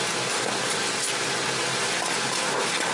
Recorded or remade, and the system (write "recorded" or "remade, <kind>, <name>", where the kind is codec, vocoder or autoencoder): recorded